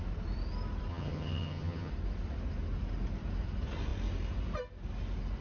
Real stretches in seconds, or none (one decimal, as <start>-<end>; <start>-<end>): 0.0-0.9; 1.9-5.4